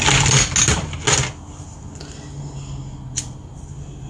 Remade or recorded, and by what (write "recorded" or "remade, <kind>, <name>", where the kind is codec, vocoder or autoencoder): recorded